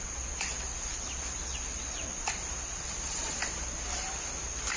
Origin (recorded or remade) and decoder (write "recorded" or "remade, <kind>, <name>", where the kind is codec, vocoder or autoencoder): recorded